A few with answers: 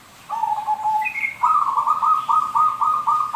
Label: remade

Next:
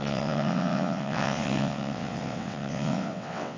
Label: remade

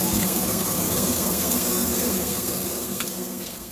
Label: remade